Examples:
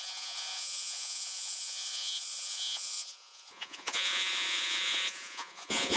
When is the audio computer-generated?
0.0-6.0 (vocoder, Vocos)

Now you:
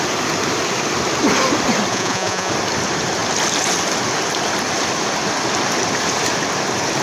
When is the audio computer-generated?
1.9-2.5 (vocoder, Vocos)

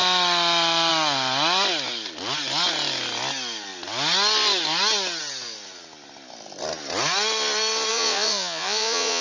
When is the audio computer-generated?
7.9-9.2 (vocoder, Vocos)

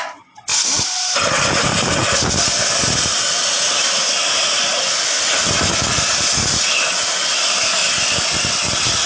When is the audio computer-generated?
none

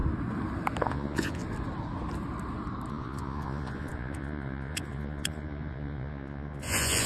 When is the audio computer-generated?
0.8-1.4 (vocoder, Vocos); 2.9-7.1

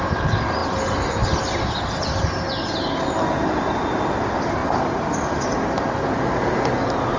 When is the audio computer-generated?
none

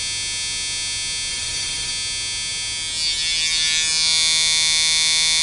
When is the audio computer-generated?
1.3-1.9 (vocoder, Vocos)

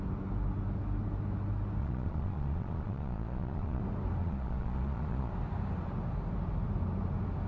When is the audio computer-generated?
1.8-3.8 (vocoder, Vocos); 4.2-5.3